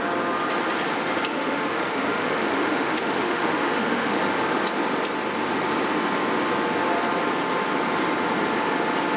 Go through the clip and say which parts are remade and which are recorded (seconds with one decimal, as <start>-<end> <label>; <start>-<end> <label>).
0.0-1.3 recorded; 1.3-4.2 remade; 4.2-9.2 recorded